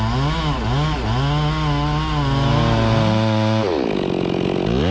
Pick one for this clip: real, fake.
real